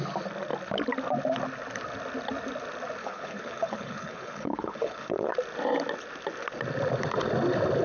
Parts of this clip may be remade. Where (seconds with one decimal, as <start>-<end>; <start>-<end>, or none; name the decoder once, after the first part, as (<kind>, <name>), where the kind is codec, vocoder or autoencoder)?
3.0-5.3 (codec, HILCodec)